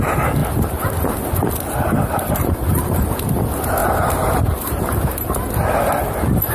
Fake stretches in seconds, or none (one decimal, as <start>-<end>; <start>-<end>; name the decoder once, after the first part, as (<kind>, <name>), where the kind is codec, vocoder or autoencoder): none